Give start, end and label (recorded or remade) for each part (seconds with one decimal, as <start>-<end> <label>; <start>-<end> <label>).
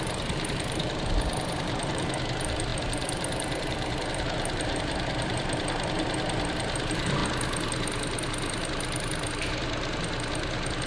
0.0-7.2 remade; 7.2-10.9 recorded